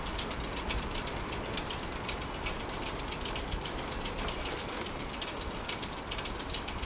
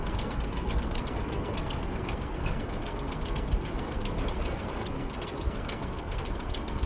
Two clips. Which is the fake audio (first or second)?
second